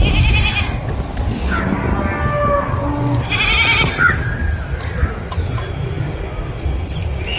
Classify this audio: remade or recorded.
recorded